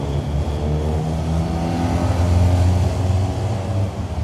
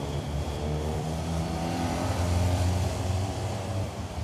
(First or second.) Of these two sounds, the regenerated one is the second